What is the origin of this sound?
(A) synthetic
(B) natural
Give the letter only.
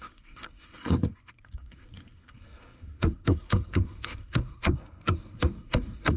A